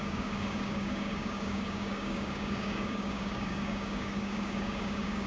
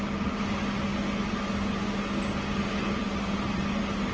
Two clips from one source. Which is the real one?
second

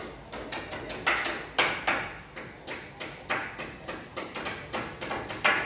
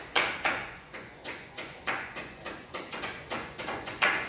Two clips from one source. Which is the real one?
first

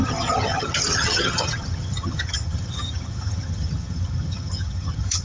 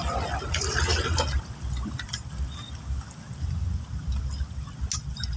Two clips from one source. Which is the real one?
second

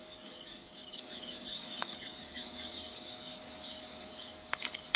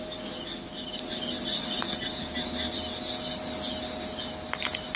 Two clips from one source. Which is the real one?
second